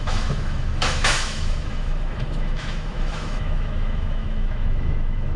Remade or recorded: remade